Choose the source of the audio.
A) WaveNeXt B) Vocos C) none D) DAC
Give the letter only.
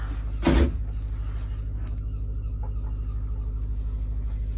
C